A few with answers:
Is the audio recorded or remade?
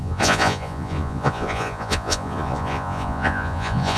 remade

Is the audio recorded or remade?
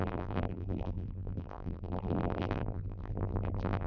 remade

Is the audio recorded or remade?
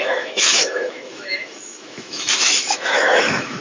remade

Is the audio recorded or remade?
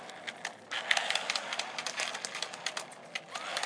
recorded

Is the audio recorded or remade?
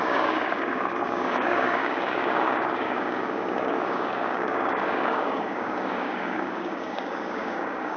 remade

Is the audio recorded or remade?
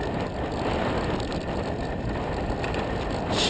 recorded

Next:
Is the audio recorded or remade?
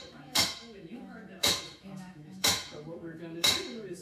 remade